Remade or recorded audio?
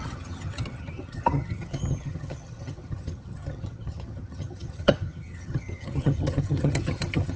remade